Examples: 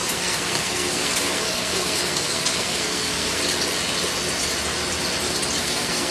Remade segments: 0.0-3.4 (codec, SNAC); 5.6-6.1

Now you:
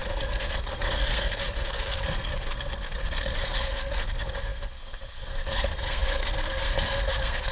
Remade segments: 0.0-7.5 (codec, SNAC)

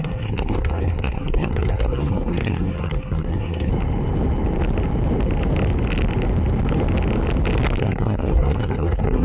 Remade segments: 0.0-3.7 (codec, SNAC); 7.8-9.2

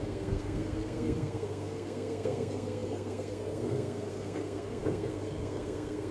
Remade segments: 0.0-6.1 (codec, SNAC)

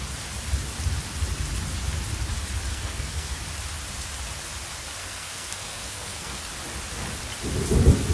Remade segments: 2.7-3.4 (codec, SNAC); 5.0-6.5

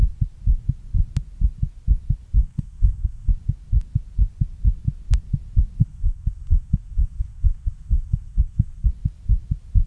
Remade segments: 2.4-3.3 (codec, SNAC); 5.8-8.9

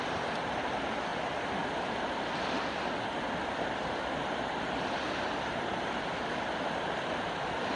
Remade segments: none